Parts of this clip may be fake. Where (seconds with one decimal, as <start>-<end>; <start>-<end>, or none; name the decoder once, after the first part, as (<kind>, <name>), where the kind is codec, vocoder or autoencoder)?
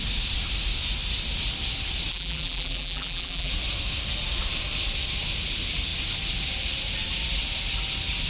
2.1-3.5 (vocoder, BigVGAN v2)